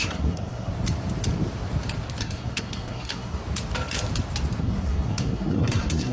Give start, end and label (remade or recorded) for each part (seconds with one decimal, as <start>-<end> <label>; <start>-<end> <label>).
0.0-0.7 remade; 0.7-2.2 recorded; 2.2-3.4 remade; 3.4-4.6 recorded; 4.6-6.1 remade